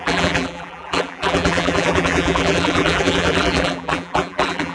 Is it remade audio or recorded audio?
remade